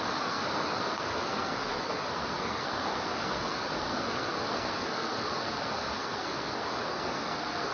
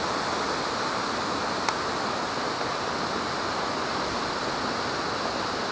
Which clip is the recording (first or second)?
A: second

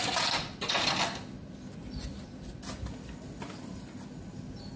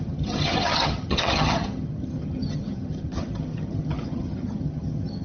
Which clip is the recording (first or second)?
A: first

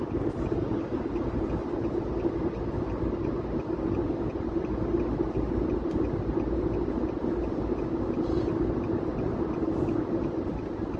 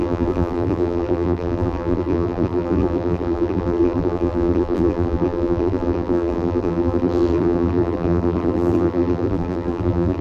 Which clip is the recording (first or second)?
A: first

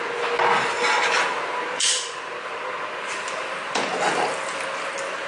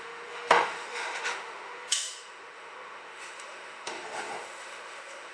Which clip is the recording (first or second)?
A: first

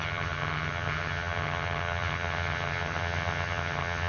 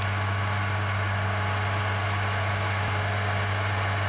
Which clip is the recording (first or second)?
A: second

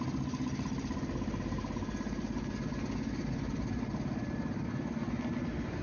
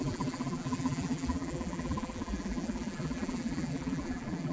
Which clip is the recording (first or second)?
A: first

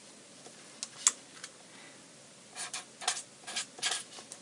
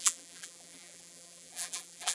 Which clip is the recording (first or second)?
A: first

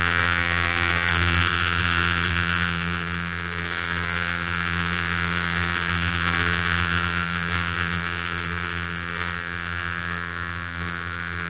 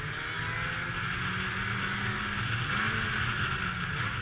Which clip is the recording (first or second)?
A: second